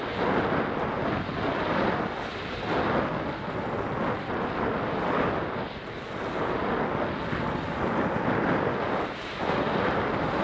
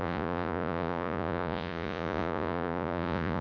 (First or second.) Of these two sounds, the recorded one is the first